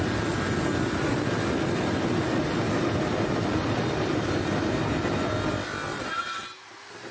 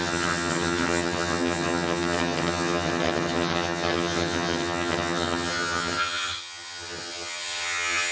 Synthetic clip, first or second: second